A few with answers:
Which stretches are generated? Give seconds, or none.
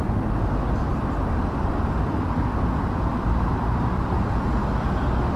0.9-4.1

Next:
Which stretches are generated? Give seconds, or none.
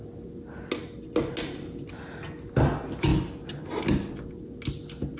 3.1-3.9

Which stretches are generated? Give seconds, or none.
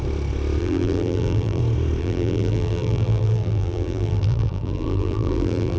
0.6-1.6; 2.0-5.8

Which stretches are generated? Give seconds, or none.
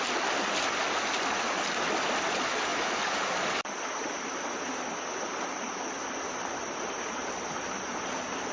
2.7-4.6; 7.2-7.9